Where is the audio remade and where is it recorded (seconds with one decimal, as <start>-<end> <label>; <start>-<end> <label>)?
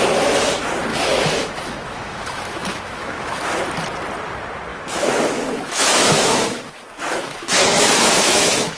0.0-0.9 recorded; 0.9-3.4 remade; 3.4-4.7 recorded; 4.7-8.8 remade